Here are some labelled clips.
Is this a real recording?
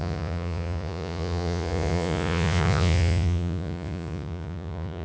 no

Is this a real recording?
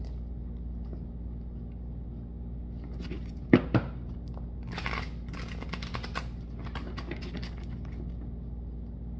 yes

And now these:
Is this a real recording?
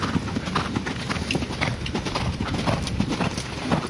yes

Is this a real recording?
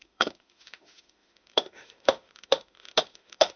no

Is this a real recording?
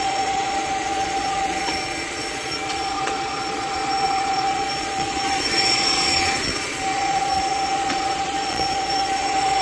no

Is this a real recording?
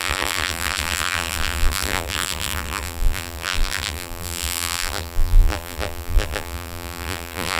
no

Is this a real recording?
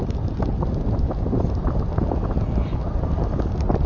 yes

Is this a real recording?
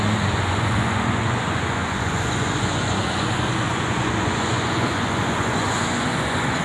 no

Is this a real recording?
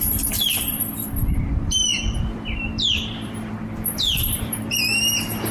no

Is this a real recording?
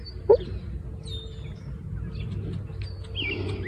yes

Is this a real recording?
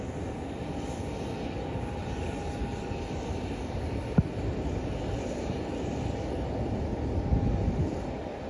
yes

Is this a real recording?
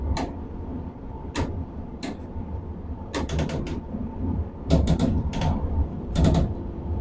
no